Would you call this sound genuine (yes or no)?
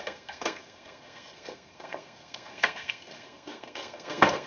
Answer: no